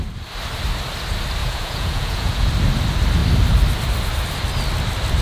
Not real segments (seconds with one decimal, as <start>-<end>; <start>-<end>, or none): 1.4-2.5